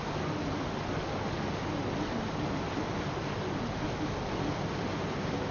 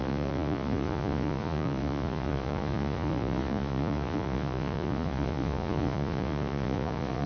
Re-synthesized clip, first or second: second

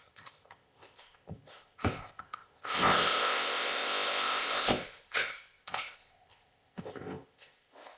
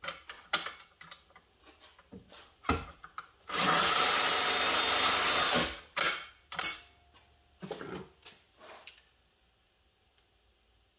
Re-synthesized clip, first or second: first